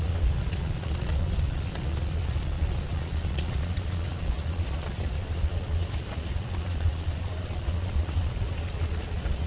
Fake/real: fake